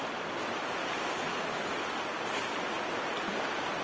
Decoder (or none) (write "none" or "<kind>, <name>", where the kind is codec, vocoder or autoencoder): none